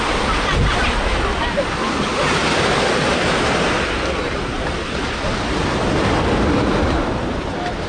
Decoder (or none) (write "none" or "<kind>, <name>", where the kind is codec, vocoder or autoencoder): none